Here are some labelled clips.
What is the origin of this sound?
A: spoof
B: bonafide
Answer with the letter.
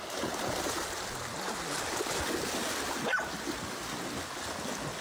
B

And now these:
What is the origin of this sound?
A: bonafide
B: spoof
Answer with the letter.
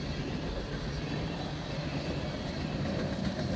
A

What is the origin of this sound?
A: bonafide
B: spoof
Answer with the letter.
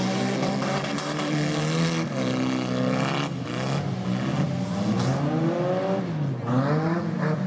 A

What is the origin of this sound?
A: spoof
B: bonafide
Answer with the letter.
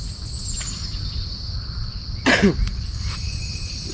B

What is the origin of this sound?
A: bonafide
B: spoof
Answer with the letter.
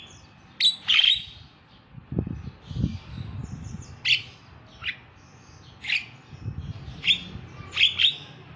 A